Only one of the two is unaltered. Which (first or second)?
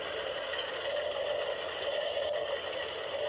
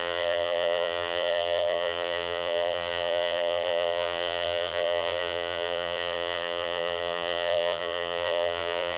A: first